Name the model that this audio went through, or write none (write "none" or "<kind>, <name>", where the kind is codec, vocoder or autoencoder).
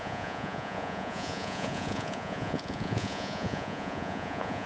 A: vocoder, Vocos